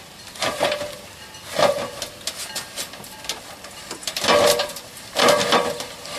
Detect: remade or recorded recorded